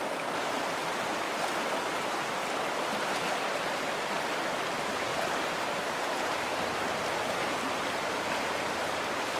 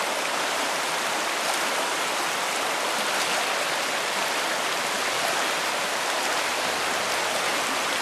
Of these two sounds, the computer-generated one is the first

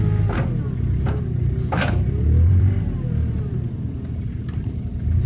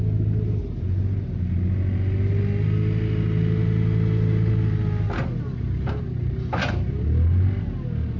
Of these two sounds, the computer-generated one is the first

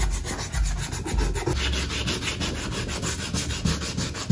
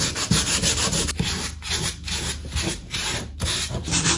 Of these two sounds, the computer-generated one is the second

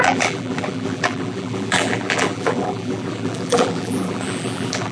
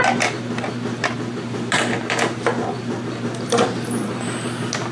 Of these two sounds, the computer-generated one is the first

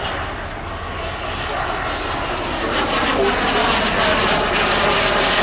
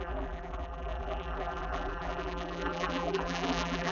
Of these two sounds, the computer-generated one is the second